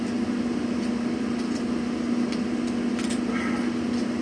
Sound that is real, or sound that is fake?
real